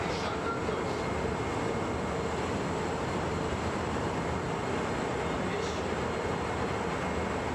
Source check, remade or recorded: recorded